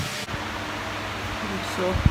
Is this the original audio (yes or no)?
yes